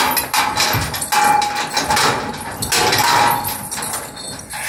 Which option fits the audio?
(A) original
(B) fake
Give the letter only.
A